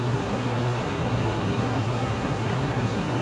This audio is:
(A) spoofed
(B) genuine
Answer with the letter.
A